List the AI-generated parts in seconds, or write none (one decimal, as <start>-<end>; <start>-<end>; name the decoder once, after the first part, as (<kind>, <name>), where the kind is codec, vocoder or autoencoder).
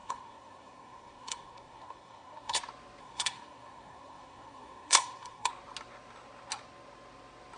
0.0-2.6 (codec, SNAC); 3.0-5.5